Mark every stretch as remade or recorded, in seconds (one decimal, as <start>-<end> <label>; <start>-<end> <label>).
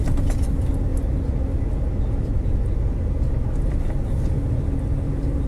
0.0-5.5 recorded